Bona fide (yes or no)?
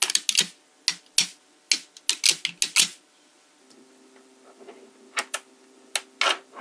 yes